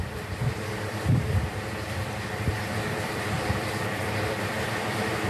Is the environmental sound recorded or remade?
remade